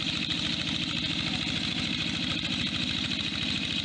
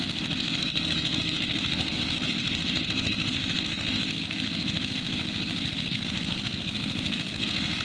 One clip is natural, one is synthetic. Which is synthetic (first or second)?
second